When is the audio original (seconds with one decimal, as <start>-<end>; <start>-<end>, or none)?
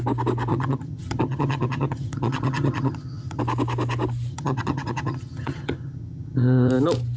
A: 0.0-0.5; 3.4-4.3; 6.7-7.2